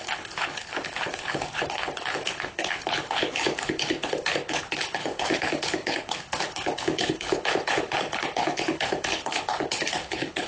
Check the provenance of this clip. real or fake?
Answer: fake